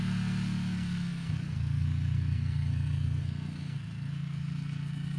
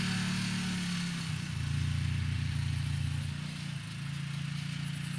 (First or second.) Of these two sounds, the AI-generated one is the first